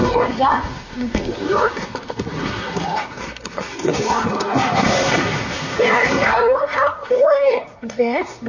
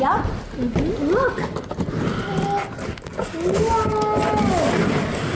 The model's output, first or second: first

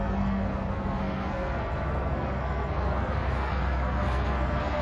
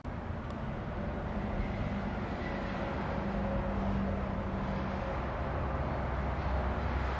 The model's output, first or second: first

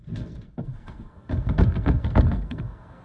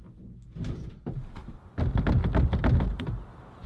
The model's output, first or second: first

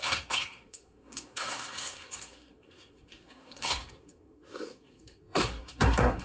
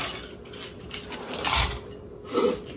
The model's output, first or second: first